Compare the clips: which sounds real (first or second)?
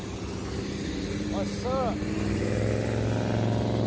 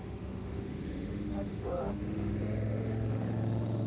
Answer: first